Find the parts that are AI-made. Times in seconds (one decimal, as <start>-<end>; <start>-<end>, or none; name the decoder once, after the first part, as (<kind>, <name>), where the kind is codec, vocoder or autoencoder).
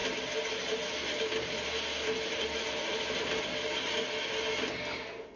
none